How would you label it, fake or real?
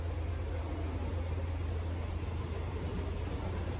real